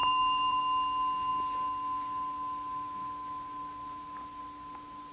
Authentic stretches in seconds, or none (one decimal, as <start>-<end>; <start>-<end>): 0.6-5.1

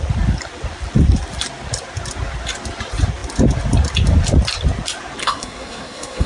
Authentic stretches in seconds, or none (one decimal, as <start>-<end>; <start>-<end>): 0.0-5.2

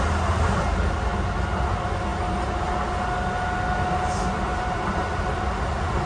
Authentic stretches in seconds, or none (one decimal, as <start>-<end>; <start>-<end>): 0.0-6.1

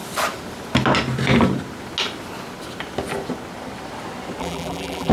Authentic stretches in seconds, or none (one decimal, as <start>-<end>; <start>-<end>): 0.0-4.4

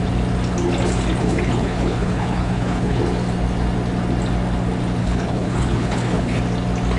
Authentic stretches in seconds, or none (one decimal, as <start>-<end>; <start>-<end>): 0.0-1.2; 3.0-5.0; 6.4-7.0

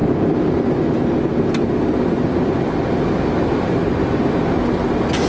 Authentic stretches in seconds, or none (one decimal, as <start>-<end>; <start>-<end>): 0.0-5.3

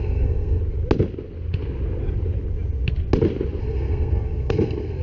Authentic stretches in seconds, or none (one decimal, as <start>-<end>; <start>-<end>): 0.6-3.6

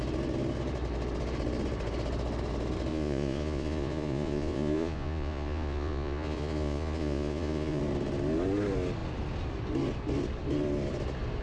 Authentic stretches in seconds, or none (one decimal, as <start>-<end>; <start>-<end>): 0.0-2.9; 7.8-11.4